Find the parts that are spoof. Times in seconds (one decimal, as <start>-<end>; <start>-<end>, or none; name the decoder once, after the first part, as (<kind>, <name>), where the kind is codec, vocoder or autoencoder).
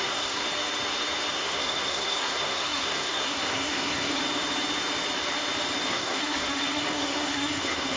0.0-0.4 (codec, SNAC); 1.3-4.2; 5.9-8.0